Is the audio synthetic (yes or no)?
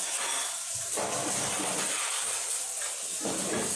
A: no